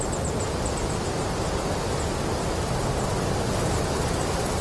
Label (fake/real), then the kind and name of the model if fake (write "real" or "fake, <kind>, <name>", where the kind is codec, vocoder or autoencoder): real